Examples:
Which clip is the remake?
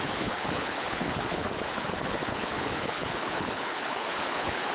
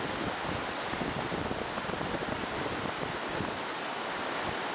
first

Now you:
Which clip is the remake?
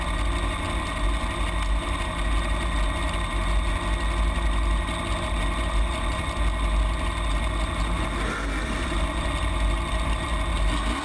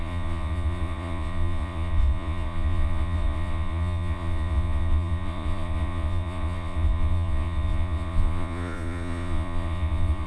second